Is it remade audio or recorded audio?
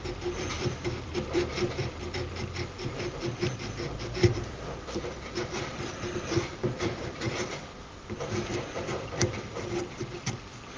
remade